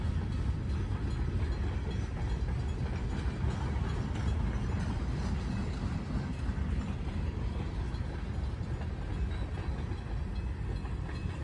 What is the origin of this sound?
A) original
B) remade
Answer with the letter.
A